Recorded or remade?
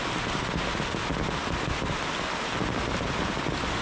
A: recorded